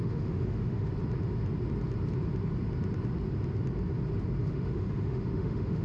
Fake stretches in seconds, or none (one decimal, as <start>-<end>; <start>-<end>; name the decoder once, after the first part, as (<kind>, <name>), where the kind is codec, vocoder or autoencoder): 0.0-0.9 (autoencoder, DAC-VAE); 4.4-5.8

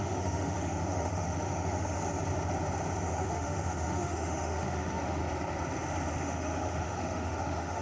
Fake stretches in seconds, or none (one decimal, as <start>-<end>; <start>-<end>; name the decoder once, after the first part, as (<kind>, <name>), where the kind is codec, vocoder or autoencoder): 0.0-2.0 (autoencoder, DAC-VAE); 3.0-5.2; 6.2-7.8

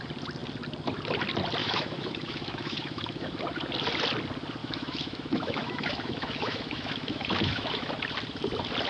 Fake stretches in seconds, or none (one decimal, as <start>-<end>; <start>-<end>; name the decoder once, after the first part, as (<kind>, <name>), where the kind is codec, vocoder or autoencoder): 1.6-3.4 (autoencoder, DAC-VAE); 4.6-7.9

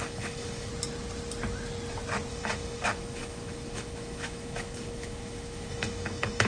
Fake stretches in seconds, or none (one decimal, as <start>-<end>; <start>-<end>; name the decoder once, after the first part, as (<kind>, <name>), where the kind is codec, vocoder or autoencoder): 0.0-0.7 (autoencoder, DAC-VAE); 2.3-6.5

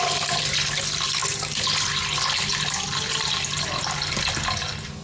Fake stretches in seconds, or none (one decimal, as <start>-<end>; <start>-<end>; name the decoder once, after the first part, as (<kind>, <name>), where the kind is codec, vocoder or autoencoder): none

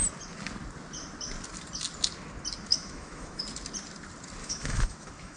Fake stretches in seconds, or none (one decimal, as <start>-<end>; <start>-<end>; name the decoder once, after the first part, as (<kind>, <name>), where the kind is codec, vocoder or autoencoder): 2.7-3.4 (autoencoder, DAC-VAE); 4.4-5.4